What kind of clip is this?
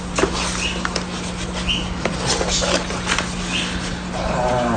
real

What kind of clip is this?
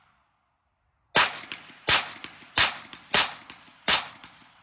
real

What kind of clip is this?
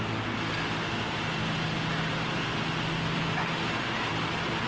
real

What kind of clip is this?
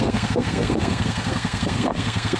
fake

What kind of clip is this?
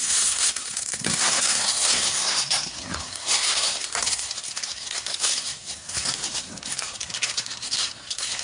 fake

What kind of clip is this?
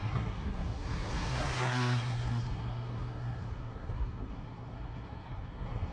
fake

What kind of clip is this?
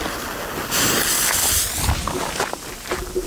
real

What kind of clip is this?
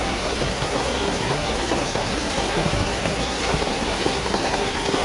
fake